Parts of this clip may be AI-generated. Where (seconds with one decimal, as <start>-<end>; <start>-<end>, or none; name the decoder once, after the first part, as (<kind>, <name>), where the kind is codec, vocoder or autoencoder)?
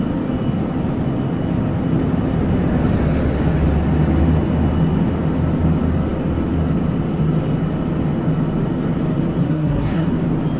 9.4-10.1 (codec, SNAC)